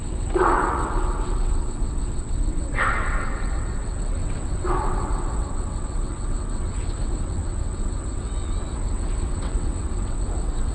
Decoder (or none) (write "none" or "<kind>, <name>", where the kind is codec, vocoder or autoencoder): vocoder, WaveNeXt